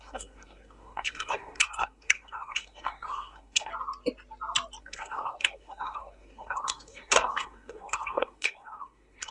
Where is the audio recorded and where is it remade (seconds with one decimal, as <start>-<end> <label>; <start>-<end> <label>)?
0.0-3.7 remade; 3.7-4.8 recorded; 4.8-9.3 remade